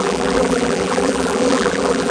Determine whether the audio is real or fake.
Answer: fake